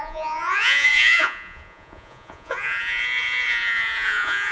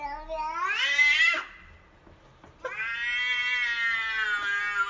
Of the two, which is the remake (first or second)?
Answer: first